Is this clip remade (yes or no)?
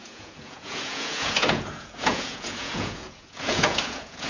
yes